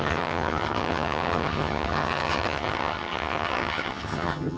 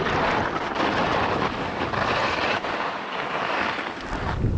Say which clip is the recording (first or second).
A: second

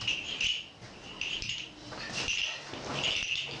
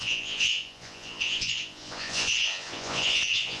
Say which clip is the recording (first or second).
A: first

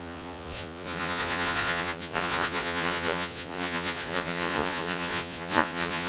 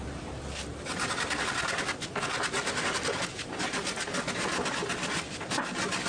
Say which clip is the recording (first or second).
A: second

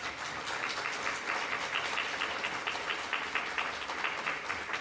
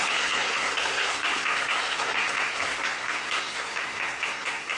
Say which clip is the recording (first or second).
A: first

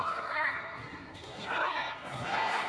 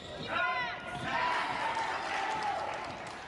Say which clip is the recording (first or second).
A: second